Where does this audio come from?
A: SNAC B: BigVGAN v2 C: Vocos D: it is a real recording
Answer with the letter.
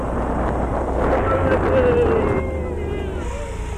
D